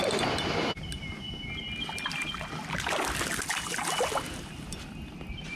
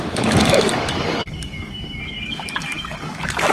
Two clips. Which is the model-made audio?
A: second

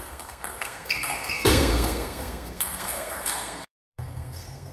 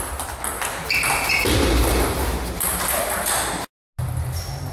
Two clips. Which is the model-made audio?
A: first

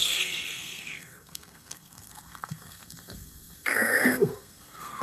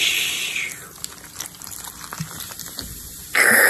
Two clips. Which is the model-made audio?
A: first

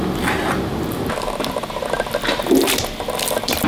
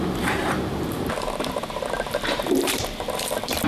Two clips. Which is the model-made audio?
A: second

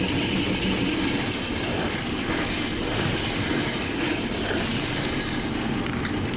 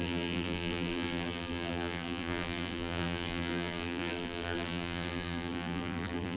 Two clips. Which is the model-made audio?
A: second